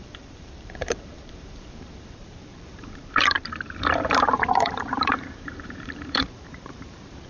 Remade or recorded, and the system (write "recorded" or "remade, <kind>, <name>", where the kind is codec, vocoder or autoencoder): remade, vocoder, BigVGAN v2